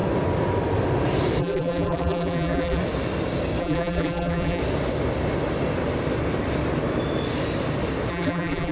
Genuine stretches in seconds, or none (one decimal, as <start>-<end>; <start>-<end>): 0.0-1.4; 2.8-3.6; 4.6-8.1